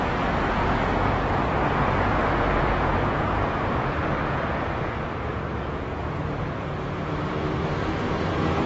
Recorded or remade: remade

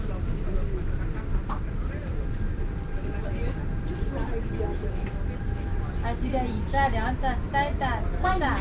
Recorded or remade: recorded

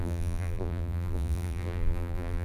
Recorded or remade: remade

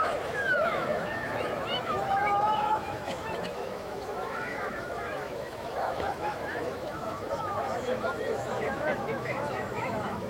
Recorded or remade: remade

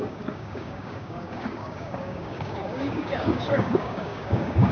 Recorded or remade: remade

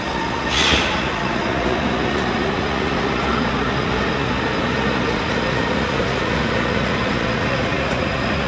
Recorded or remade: remade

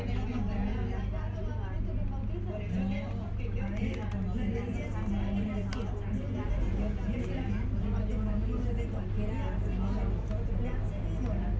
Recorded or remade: recorded